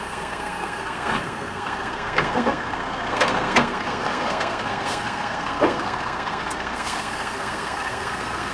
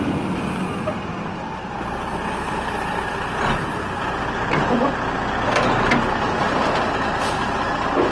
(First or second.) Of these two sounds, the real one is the second